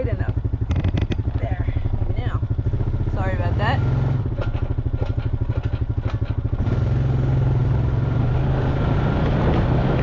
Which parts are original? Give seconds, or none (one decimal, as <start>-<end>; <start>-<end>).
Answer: 0.0-10.0